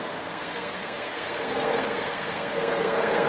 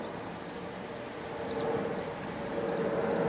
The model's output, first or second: first